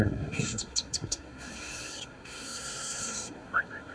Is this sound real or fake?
fake